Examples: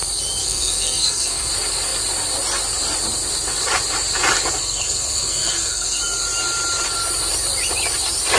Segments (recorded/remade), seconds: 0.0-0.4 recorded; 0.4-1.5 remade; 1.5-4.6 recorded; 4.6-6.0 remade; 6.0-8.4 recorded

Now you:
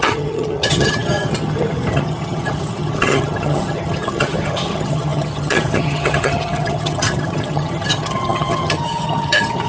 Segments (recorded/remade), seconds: 0.0-9.7 remade

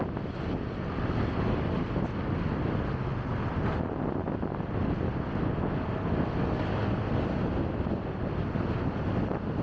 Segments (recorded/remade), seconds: 0.0-9.6 recorded

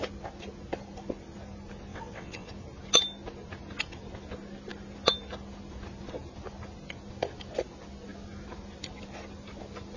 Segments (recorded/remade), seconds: 0.0-1.9 recorded; 1.9-2.5 remade; 2.5-10.0 recorded

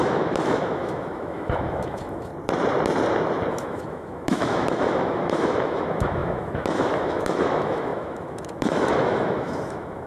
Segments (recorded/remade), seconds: 0.0-2.3 remade; 2.3-3.5 recorded; 3.5-10.1 remade

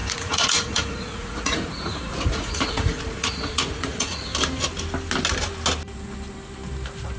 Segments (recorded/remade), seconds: 0.0-4.3 remade; 4.3-7.2 recorded